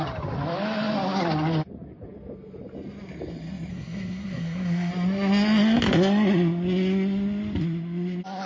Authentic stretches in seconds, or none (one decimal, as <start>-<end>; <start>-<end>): 0.0-3.7; 4.9-8.5